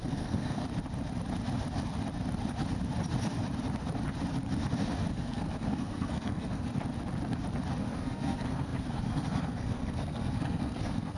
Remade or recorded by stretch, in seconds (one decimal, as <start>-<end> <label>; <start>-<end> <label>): 0.0-0.6 remade; 0.6-5.1 recorded; 5.1-6.7 remade; 6.7-7.8 recorded; 7.8-11.2 remade